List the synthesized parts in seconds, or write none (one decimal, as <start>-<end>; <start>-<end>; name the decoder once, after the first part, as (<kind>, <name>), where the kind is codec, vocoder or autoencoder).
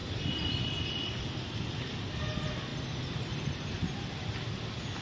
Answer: none